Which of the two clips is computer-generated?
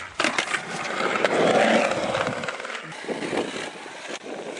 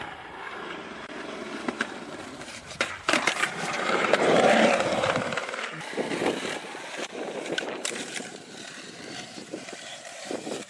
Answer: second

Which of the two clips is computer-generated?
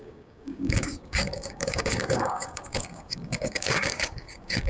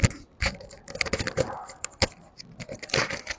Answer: first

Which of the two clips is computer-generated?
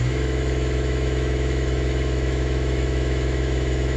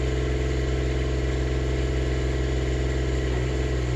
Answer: first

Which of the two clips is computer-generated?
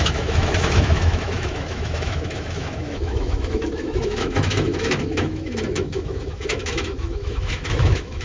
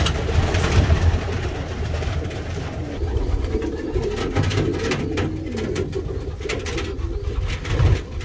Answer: first